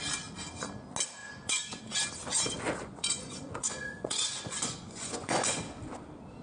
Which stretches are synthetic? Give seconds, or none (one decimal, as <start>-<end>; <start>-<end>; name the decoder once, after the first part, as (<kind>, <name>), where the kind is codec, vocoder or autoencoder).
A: 1.2-1.8 (vocoder, Vocos); 2.8-5.6